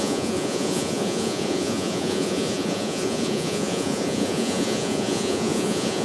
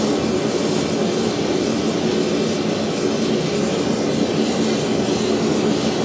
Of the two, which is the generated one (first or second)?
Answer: first